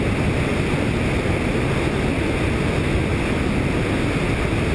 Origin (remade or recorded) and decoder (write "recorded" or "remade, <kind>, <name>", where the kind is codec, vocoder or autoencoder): recorded